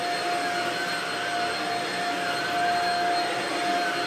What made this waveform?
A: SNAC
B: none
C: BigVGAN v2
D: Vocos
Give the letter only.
B